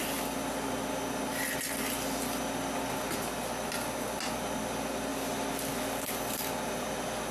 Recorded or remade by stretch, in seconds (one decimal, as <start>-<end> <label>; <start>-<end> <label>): 0.0-7.3 recorded